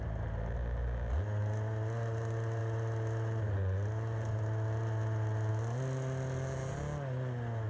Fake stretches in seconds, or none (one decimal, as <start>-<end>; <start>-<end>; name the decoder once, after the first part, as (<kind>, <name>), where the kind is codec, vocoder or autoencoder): none